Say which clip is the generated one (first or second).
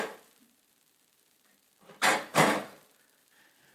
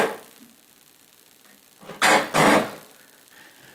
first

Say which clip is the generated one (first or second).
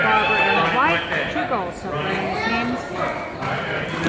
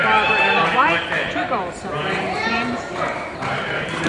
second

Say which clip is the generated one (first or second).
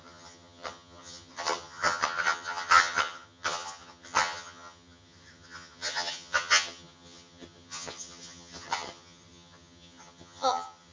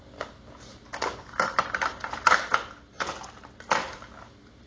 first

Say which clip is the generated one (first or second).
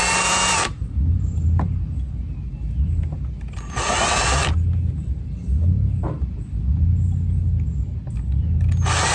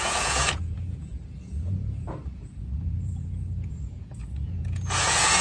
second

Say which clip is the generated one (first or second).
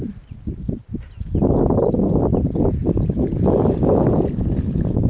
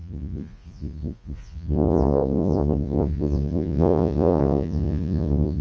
second